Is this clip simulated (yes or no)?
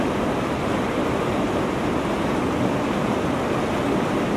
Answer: no